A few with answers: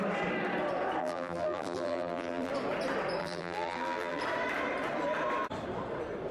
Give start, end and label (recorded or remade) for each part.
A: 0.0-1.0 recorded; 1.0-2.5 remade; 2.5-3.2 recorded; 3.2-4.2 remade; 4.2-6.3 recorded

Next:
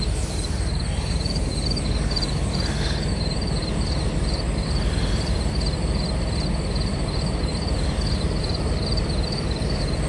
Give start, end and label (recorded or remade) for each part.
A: 0.0-10.1 remade

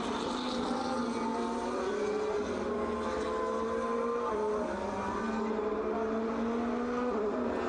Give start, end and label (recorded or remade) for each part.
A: 0.0-1.3 recorded; 1.3-1.8 remade; 1.8-7.7 recorded

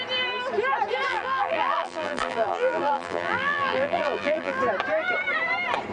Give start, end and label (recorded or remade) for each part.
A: 0.0-1.1 recorded; 1.1-4.6 remade; 4.6-5.9 recorded

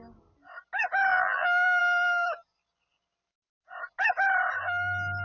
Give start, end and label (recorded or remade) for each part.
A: 0.0-1.1 recorded; 1.1-1.8 remade; 1.8-5.2 recorded

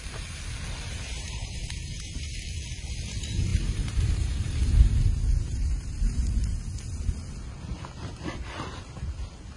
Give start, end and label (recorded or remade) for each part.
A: 0.0-1.1 recorded; 1.1-2.3 remade; 2.3-3.5 recorded; 3.5-6.8 remade; 6.8-9.6 recorded

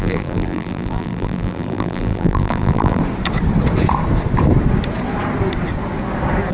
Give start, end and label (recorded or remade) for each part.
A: 0.0-3.0 remade; 3.0-6.5 recorded